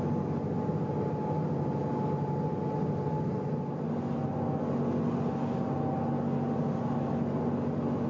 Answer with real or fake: real